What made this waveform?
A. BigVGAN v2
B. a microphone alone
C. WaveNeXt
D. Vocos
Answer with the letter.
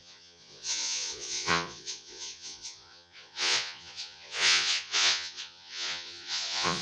D